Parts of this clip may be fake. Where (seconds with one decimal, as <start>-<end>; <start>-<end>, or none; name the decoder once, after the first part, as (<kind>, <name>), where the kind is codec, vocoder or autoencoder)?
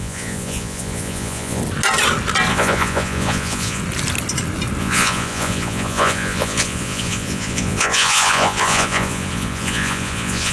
0.0-1.6 (vocoder, Vocos); 2.5-3.8; 4.8-10.5